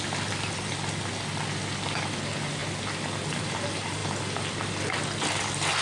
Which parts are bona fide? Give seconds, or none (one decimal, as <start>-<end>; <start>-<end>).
0.0-5.8

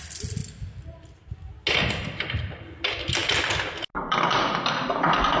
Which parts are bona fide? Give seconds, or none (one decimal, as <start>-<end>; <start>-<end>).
0.4-1.9; 3.2-5.4

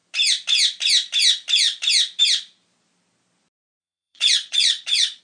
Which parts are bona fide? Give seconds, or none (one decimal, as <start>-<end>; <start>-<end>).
0.0-3.8

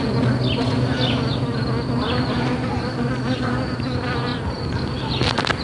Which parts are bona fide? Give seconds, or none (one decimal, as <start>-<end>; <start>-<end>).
0.0-5.6

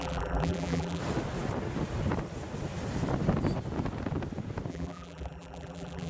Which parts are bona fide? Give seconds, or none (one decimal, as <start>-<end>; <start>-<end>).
1.0-4.7

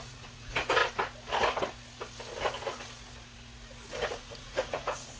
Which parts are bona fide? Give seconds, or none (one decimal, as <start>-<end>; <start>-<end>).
0.8-3.9